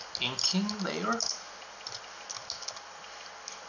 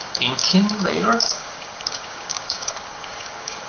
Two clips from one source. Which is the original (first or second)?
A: first